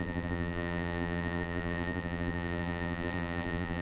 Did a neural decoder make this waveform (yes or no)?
yes